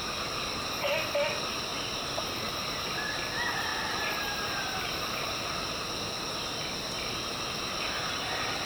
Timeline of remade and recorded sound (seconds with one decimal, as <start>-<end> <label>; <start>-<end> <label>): 0.0-1.7 recorded; 1.7-2.5 remade; 2.5-3.7 recorded; 3.7-5.9 remade; 5.9-8.7 recorded